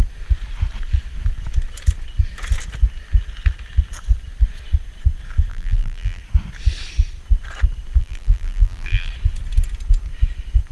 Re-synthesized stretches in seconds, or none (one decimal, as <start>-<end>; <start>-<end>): 5.5-6.2; 8.0-9.1